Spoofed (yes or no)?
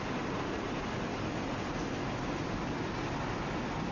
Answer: no